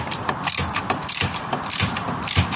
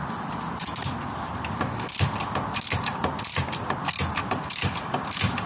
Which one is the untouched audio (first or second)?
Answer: second